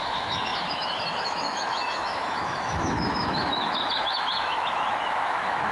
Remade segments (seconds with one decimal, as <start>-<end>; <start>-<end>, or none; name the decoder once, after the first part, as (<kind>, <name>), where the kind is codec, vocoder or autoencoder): 0.0-5.7 (autoencoder, DAC-VAE)